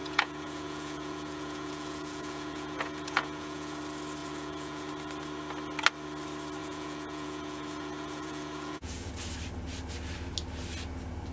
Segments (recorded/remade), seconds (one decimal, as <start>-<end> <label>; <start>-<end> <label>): 0.0-3.8 remade; 3.8-4.2 recorded; 4.2-4.9 remade; 4.9-6.6 recorded; 6.6-9.1 remade; 9.1-11.3 recorded